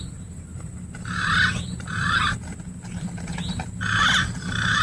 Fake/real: real